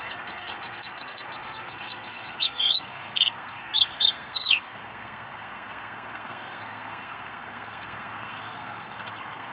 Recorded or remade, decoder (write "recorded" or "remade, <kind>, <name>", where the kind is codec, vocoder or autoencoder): remade, codec, SNAC